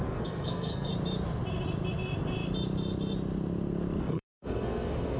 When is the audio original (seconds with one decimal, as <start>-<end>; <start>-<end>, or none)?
0.9-4.0